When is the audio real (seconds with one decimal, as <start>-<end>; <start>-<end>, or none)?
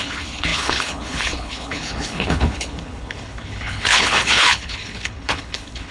none